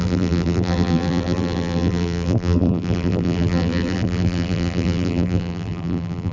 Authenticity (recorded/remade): remade